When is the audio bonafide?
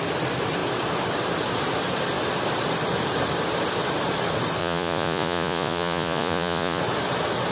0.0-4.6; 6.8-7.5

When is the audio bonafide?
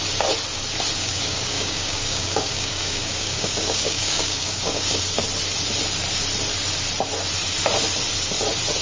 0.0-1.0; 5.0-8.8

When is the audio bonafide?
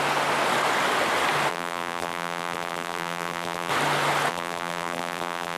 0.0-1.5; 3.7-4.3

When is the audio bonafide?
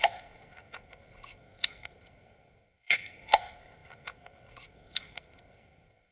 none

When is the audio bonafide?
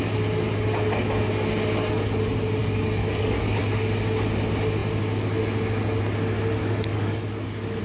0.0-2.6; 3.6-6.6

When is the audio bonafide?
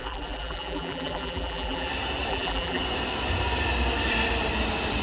1.9-2.3; 2.8-5.0